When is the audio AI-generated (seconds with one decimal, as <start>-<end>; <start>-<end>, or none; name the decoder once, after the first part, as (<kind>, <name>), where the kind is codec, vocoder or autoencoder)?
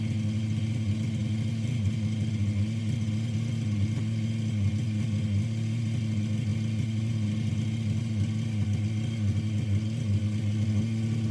none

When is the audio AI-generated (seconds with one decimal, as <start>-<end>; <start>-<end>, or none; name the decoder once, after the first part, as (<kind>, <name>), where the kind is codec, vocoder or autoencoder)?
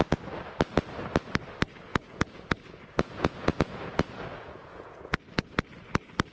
1.9-5.1 (vocoder, Vocos)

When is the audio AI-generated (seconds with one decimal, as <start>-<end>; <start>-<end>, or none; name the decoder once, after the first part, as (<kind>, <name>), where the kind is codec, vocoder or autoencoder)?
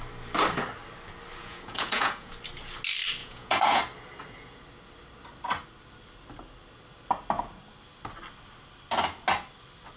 1.4-2.3 (vocoder, Vocos); 3.2-3.8